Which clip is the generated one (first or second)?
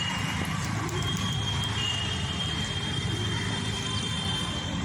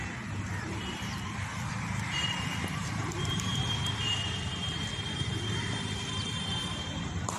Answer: second